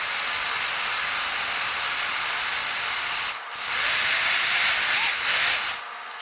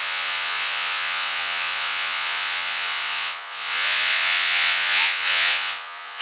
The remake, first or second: second